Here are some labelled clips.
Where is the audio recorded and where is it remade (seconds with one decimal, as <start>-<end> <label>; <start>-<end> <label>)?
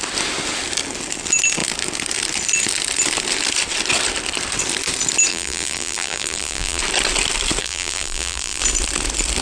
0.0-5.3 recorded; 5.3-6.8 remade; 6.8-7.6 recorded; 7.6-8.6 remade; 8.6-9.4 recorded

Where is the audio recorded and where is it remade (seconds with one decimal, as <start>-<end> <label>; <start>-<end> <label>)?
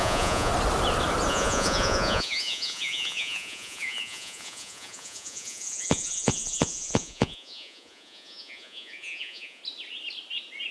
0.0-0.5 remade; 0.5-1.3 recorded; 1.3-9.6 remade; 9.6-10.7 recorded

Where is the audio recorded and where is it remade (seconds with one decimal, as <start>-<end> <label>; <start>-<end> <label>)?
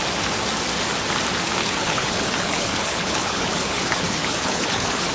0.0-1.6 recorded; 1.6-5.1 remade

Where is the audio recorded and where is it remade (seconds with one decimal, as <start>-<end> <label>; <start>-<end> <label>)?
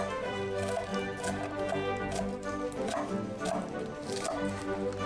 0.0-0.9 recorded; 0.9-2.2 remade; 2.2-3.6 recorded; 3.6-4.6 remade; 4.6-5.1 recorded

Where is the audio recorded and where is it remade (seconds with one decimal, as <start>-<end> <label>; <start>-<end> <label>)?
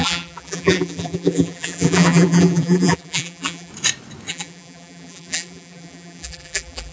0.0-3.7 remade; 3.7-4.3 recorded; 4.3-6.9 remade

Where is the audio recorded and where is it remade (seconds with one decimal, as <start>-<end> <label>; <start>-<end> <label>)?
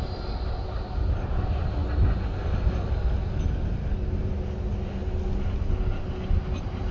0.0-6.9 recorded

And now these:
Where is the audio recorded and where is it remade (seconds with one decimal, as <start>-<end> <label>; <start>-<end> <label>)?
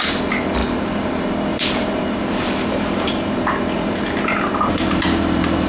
0.0-0.6 recorded; 0.6-1.1 remade; 1.1-1.5 recorded; 1.5-4.9 remade; 4.9-5.7 recorded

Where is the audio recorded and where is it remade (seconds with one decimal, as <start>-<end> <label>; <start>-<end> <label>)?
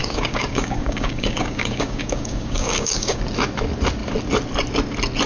0.0-3.2 remade; 3.2-5.3 recorded